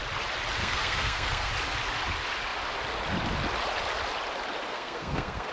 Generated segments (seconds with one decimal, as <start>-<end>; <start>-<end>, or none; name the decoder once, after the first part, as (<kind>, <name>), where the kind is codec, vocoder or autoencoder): 0.6-1.5 (codec, SNAC); 4.7-5.5